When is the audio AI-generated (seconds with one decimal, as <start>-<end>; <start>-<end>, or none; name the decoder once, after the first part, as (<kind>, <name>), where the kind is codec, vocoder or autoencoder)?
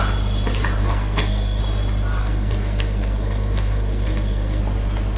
0.8-1.6 (codec, SNAC); 2.2-4.6